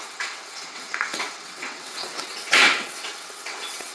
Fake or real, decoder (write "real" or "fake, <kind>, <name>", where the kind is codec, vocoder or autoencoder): fake, vocoder, WaveNeXt